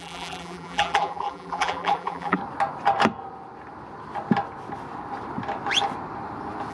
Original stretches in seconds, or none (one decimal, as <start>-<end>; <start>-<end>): 2.4-6.7